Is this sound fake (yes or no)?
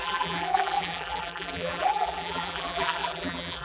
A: yes